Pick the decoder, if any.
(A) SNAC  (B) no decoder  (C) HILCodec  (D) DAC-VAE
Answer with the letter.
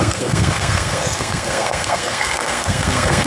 A